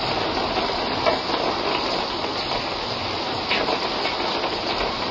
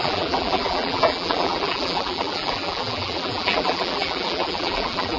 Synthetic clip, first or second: second